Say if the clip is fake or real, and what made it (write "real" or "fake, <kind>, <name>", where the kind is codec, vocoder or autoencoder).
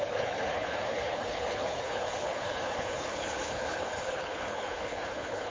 fake, codec, HILCodec